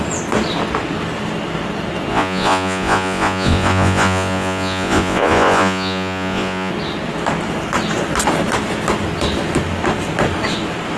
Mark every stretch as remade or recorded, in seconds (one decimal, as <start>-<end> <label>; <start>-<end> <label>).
0.0-2.1 recorded; 2.1-6.7 remade; 6.7-11.0 recorded